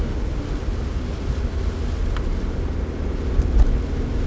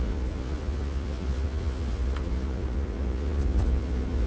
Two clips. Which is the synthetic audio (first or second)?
second